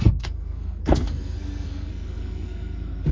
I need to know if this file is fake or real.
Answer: fake